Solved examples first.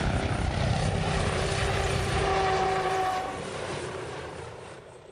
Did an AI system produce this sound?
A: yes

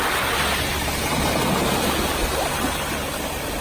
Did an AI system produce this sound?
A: no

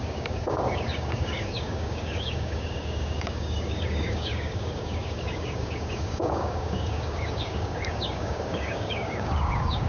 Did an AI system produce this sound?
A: yes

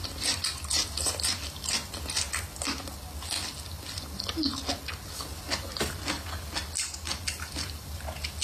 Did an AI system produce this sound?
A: no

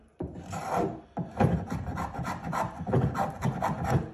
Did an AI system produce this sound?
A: no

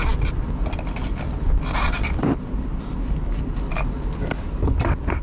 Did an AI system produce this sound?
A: no